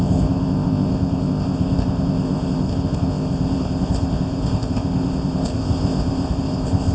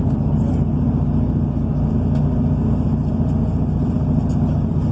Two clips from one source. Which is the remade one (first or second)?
first